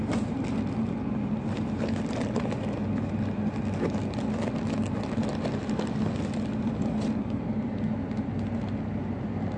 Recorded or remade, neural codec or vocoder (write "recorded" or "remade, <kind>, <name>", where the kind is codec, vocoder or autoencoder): recorded